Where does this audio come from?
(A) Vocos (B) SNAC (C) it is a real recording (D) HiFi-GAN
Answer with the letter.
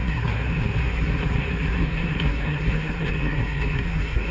B